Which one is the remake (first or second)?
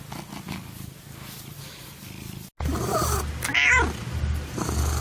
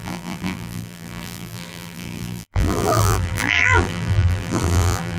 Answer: second